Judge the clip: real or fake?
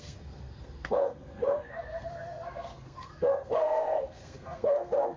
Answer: fake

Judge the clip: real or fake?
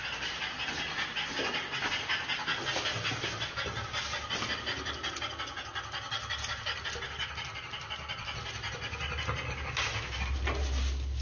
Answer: real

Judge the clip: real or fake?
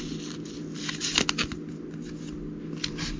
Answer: real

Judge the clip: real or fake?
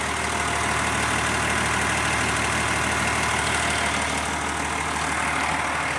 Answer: real